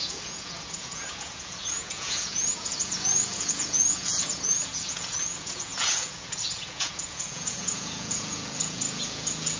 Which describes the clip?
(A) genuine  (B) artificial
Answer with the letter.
B